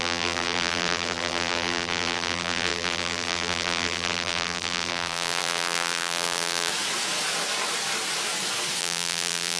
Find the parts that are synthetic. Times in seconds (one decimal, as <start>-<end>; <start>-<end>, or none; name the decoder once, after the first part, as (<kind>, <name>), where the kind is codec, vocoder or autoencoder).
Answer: 0.0-6.7 (vocoder, BigVGAN v2); 8.8-9.6